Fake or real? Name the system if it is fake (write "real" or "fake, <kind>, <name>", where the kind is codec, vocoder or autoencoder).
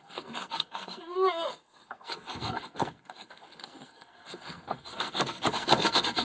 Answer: fake, codec, SNAC